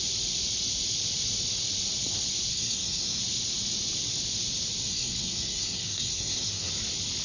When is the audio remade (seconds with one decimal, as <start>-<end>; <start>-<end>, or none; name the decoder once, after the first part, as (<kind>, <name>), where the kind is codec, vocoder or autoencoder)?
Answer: 2.5-3.2 (codec, SNAC); 4.9-6.7